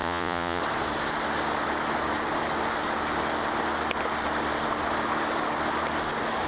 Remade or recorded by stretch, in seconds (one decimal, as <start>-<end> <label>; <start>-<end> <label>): 0.0-0.6 remade; 0.6-6.5 recorded